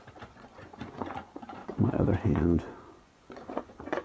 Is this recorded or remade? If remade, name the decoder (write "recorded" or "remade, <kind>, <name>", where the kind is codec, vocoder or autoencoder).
remade, vocoder, Vocos